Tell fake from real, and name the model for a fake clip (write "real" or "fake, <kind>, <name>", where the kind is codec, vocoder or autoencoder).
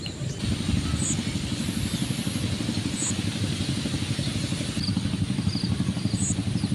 real